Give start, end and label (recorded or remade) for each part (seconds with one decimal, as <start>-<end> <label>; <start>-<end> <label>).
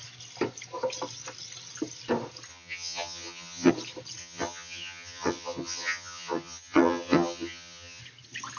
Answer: 0.0-2.5 recorded; 2.5-3.7 remade; 3.7-4.2 recorded; 4.2-8.0 remade; 8.0-8.6 recorded